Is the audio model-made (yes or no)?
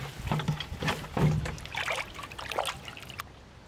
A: no